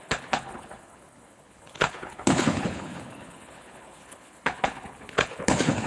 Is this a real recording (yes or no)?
no